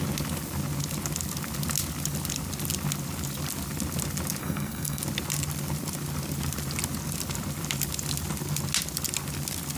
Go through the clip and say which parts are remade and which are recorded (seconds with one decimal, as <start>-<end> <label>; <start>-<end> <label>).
0.0-4.4 recorded; 4.4-5.0 remade; 5.0-9.8 recorded